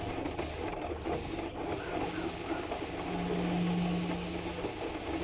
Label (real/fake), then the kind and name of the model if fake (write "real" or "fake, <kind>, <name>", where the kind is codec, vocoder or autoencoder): real